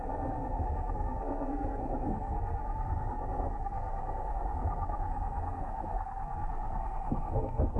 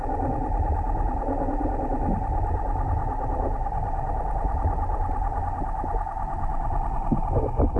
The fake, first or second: first